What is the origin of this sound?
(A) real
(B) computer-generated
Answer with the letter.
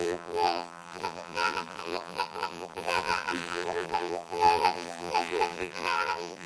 B